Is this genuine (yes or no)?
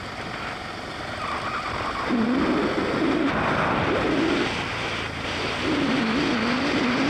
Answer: yes